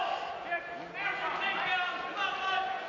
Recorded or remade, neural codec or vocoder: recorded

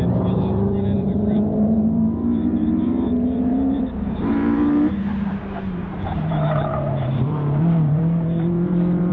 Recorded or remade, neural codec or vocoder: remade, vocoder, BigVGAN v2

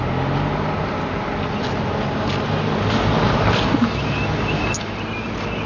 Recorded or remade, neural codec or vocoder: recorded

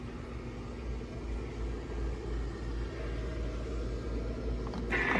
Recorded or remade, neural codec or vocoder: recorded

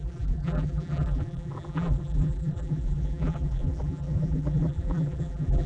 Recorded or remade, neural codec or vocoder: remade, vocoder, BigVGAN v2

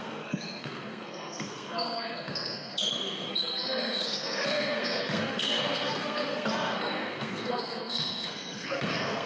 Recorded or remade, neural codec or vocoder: remade, codec, SNAC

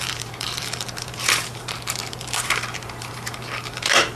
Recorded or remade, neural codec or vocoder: remade, vocoder, BigVGAN v2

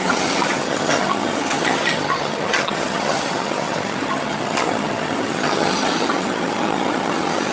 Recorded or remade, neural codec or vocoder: remade, vocoder, HiFi-GAN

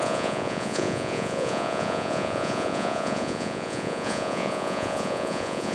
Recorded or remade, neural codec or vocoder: remade, vocoder, Vocos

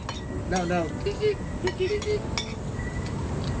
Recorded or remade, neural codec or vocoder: recorded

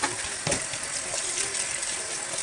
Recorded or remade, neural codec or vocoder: recorded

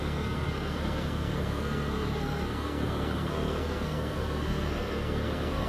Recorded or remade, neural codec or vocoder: remade, codec, SNAC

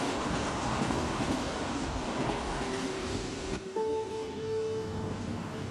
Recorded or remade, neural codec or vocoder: remade, codec, DAC